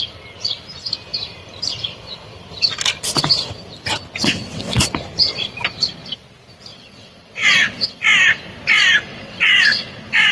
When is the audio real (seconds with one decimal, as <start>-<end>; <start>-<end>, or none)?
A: 0.0-4.2; 4.8-6.7; 8.0-9.1